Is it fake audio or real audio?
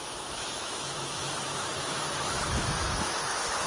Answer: fake